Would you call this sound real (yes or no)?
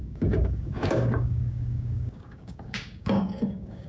no